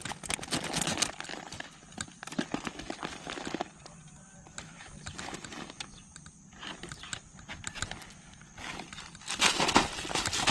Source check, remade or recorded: recorded